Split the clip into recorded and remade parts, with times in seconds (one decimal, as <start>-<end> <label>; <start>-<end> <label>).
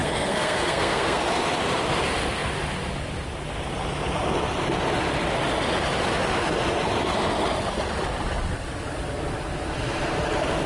0.0-1.2 remade; 1.2-10.7 recorded